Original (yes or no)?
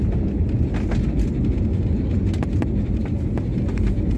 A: yes